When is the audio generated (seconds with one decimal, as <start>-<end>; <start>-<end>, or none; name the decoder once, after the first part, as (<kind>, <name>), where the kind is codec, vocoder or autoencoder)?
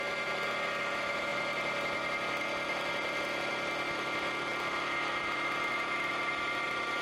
none